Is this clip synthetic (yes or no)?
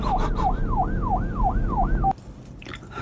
no